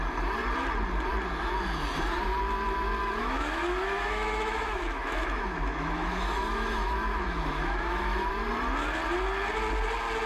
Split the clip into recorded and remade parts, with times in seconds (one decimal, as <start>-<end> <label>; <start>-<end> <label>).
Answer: 0.0-3.0 recorded; 3.0-8.3 remade; 8.3-10.3 recorded